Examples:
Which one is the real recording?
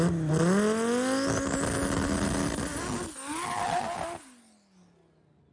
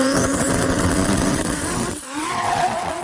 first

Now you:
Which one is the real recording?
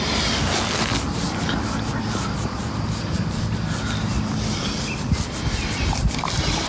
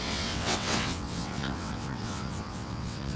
first